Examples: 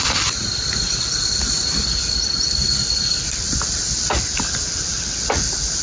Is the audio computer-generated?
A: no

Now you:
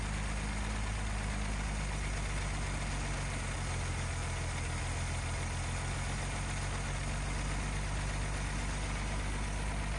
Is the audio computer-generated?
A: no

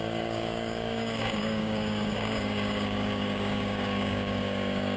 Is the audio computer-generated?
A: yes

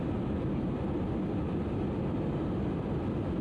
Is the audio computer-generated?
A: no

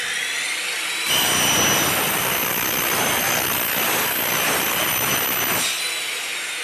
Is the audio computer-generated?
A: no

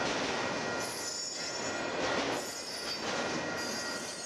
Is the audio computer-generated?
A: no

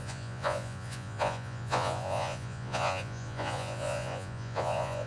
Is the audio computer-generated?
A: yes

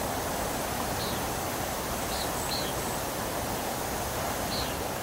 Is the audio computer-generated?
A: no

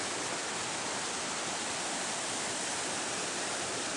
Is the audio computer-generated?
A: yes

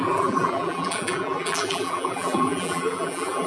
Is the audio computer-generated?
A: yes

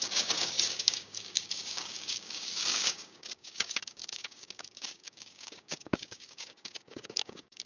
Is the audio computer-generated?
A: yes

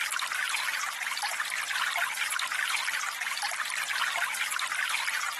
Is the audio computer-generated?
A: no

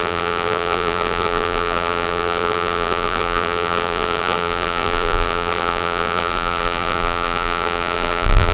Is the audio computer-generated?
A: yes